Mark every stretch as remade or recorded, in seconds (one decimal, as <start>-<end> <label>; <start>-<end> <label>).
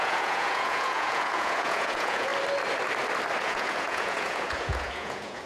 0.0-2.3 remade; 2.3-3.4 recorded; 3.4-5.5 remade